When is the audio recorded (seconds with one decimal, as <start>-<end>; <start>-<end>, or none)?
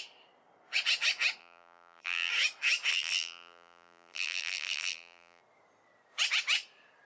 0.0-1.4; 2.3-2.9; 5.4-7.1